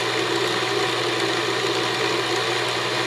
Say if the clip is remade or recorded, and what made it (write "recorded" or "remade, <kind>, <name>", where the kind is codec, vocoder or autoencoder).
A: recorded